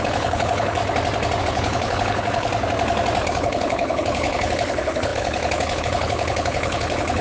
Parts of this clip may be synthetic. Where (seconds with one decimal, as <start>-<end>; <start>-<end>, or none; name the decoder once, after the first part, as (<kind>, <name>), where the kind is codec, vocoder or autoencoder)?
0.0-0.8 (codec, HILCodec); 1.4-2.5; 3.3-7.2